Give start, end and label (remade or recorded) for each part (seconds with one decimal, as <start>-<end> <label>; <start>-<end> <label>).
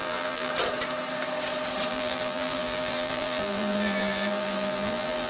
0.0-0.5 remade; 0.5-1.9 recorded; 1.9-5.3 remade